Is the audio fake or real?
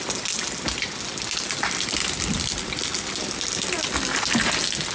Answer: real